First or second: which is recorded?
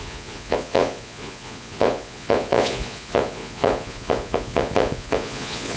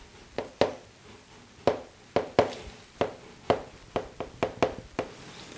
second